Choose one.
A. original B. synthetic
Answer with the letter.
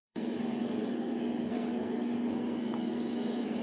B